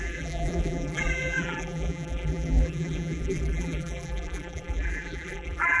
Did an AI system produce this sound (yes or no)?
yes